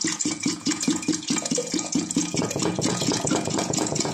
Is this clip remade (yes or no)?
yes